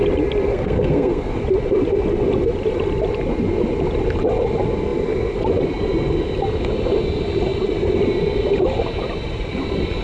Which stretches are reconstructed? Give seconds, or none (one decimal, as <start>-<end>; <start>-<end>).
0.5-1.4